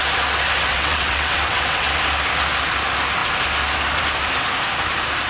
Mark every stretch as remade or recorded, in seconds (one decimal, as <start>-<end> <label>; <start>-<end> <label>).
0.0-0.7 recorded; 0.7-2.0 remade; 2.0-5.3 recorded